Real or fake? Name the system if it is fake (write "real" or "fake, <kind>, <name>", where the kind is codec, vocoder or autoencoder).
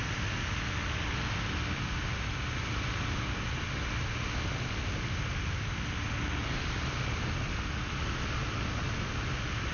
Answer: real